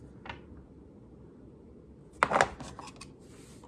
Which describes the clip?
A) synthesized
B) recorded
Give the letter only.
B